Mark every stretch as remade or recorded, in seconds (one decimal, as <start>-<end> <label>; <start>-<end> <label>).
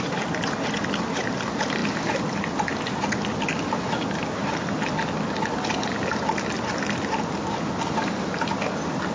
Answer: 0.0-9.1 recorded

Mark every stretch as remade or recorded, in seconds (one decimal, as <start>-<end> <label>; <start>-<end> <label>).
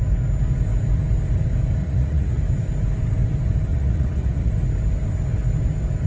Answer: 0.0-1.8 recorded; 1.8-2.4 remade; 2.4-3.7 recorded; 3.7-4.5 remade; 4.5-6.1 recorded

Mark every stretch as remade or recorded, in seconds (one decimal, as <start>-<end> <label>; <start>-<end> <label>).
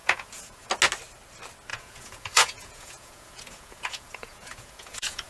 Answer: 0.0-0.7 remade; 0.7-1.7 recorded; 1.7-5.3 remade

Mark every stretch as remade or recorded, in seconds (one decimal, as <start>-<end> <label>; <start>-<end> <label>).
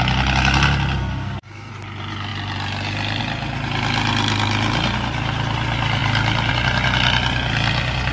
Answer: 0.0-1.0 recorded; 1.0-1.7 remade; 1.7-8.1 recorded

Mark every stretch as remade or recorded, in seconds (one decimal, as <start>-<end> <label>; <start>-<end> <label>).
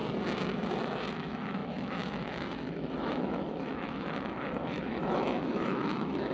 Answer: 0.0-1.1 recorded; 1.1-6.3 remade